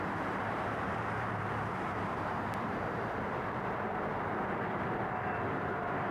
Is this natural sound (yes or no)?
no